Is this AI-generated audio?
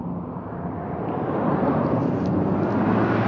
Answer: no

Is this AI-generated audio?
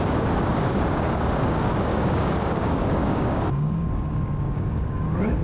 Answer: yes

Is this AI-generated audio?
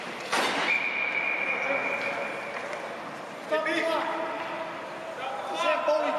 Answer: no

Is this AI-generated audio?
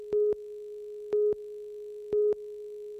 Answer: no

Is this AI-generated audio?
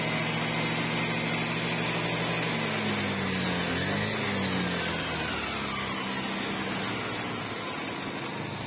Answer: no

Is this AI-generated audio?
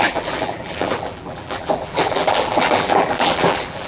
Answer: yes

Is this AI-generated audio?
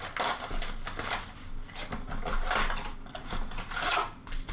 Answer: no